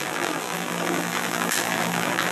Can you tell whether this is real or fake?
fake